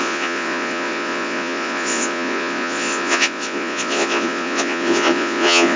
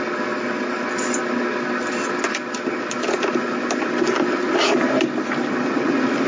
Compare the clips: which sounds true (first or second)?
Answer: second